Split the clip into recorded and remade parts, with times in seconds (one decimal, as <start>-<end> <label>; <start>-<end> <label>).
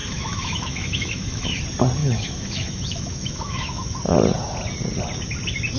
0.0-1.6 remade; 1.6-2.0 recorded; 2.0-4.0 remade; 4.0-5.8 recorded